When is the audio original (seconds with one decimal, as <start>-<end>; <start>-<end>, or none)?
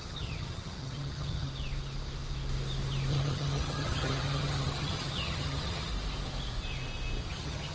1.5-3.1; 5.9-7.3